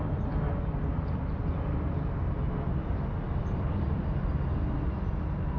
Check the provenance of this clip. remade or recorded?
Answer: recorded